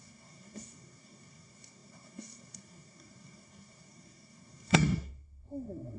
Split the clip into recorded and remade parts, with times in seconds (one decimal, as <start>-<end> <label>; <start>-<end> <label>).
0.0-6.0 remade